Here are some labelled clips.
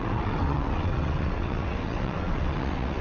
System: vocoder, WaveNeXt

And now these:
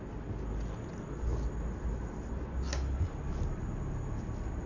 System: none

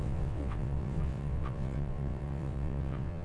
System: vocoder, WaveNeXt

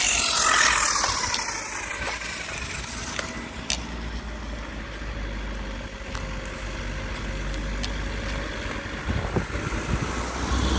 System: none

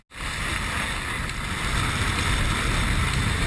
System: none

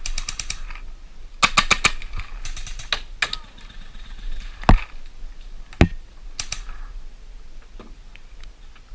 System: none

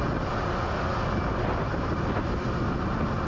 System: none